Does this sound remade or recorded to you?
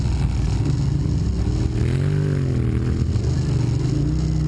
recorded